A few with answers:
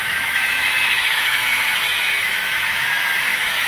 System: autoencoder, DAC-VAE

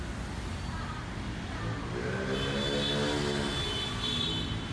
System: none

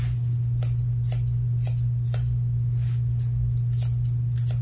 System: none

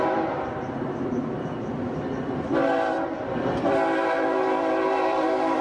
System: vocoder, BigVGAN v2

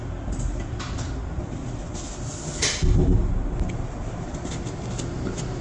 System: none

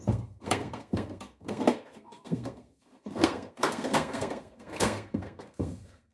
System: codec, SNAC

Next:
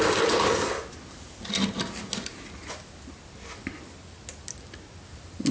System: none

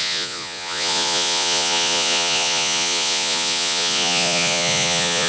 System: vocoder, Vocos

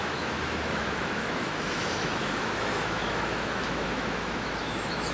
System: autoencoder, DAC-VAE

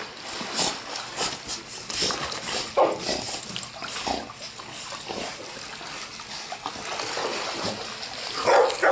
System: none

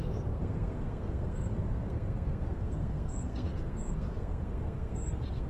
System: codec, SNAC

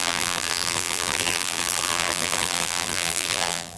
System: vocoder, BigVGAN v2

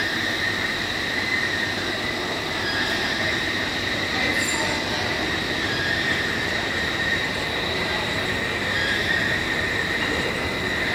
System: vocoder, BigVGAN v2